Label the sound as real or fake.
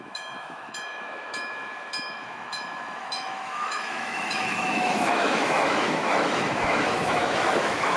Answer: fake